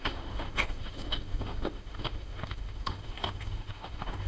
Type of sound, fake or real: fake